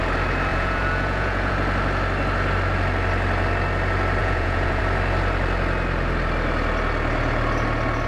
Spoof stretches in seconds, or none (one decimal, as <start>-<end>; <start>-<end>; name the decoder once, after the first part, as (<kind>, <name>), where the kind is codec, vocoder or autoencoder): 0.5-1.5 (vocoder, Vocos); 4.2-4.8